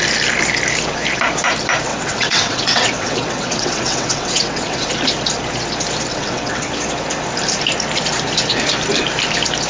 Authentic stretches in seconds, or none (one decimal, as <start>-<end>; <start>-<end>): 0.0-1.9; 4.9-6.1; 6.7-9.7